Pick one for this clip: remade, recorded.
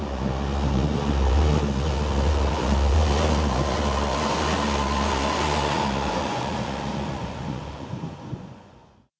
remade